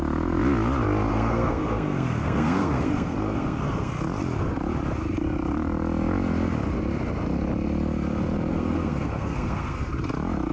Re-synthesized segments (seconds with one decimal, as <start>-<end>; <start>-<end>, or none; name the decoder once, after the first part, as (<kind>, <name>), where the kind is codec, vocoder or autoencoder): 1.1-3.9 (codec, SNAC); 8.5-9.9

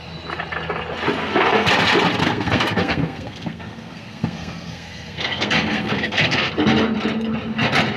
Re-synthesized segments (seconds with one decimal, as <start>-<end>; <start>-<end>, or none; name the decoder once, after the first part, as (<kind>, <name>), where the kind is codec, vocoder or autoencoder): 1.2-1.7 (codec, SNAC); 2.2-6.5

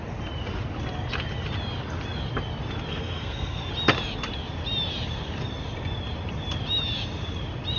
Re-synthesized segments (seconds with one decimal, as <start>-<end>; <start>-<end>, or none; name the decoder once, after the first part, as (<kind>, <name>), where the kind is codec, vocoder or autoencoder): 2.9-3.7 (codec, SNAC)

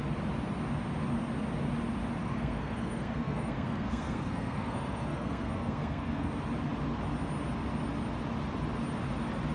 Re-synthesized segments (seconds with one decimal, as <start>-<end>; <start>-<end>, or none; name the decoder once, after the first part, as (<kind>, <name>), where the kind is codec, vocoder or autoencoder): 2.2-6.3 (codec, SNAC)

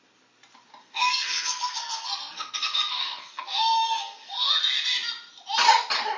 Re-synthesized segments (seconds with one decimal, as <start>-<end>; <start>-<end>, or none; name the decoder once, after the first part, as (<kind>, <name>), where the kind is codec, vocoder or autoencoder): 0.8-4.5 (codec, SNAC)

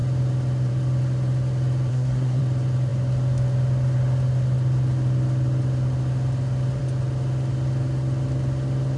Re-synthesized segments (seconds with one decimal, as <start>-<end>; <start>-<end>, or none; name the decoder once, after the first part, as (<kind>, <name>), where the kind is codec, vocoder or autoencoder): 1.9-2.4 (codec, SNAC)

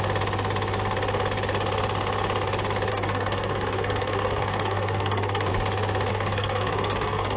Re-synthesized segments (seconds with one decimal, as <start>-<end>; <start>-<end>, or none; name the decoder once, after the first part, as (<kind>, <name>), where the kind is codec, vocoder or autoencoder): 2.9-5.5 (codec, SNAC); 6.1-7.4